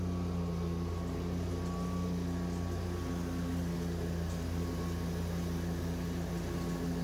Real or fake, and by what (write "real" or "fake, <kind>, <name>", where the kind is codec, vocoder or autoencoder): real